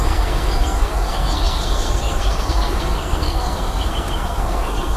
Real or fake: fake